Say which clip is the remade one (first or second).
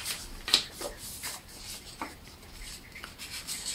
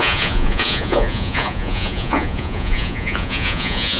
second